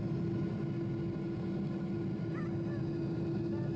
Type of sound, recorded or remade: recorded